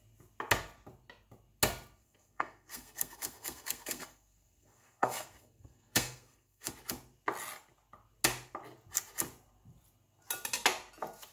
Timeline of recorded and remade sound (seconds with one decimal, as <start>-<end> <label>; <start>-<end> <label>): 0.0-2.0 recorded; 2.0-6.7 remade; 6.7-11.3 recorded